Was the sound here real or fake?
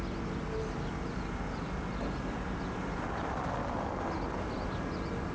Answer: real